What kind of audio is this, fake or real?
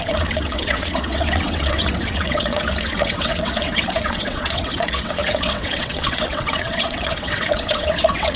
fake